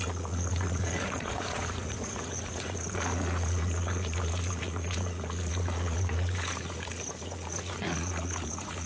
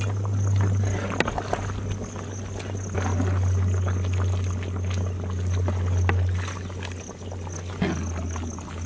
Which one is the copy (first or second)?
first